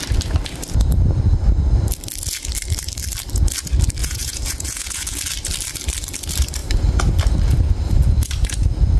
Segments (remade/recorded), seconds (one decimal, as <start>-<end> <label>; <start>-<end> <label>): 0.0-4.0 recorded; 4.0-5.2 remade; 5.2-9.0 recorded